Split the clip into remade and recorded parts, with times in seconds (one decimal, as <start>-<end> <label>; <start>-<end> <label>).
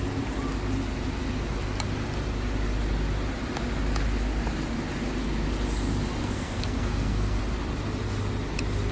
0.0-6.2 recorded; 6.2-7.4 remade; 7.4-8.9 recorded